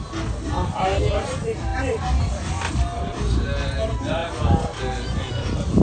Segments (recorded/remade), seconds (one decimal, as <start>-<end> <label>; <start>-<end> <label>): 0.0-5.8 recorded